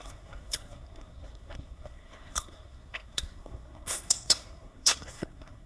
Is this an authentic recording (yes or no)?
no